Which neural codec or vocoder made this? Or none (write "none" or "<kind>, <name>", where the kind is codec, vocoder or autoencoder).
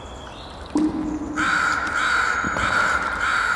none